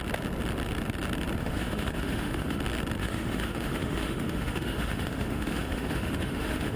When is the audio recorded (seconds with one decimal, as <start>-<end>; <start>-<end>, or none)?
0.0-1.4; 2.6-3.0